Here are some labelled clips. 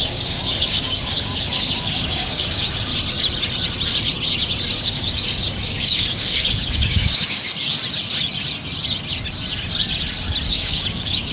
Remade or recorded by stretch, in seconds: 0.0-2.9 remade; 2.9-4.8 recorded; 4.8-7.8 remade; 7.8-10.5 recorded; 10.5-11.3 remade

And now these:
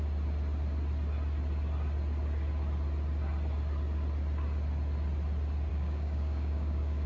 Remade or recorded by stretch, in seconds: 0.0-5.7 recorded; 5.7-7.1 remade